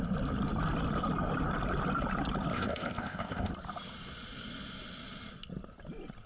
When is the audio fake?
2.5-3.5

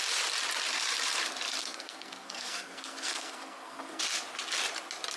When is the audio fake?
1.6-4.0

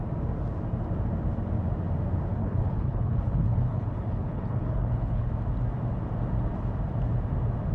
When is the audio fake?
2.4-5.3

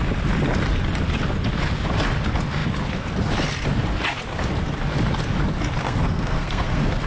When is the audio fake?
5.8-7.1